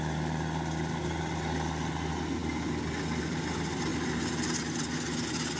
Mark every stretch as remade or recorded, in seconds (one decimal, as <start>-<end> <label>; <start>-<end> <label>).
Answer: 0.0-5.6 recorded